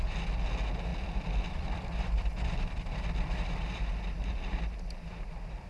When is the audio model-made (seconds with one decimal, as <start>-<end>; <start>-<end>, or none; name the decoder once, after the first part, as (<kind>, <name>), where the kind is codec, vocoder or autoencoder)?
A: 0.9-4.3 (vocoder, BigVGAN v2); 5.1-5.7